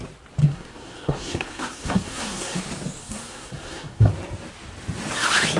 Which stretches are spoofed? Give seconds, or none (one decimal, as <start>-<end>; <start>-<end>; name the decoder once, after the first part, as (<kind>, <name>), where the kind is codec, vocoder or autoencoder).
0.4-2.6 (codec, SNAC); 3.0-4.1